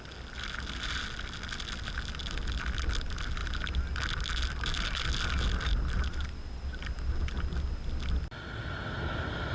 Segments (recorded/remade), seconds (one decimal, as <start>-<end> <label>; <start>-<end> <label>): 0.0-9.5 recorded